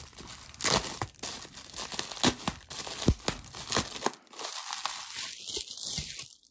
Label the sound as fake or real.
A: real